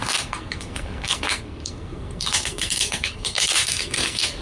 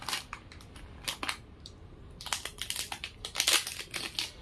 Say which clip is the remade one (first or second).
first